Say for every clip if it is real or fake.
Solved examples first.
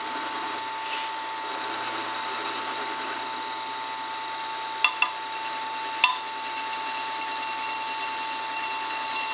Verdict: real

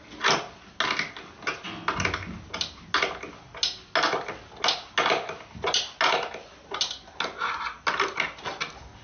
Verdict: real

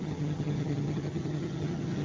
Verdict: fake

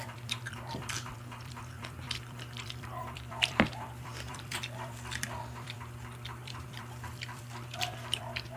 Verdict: fake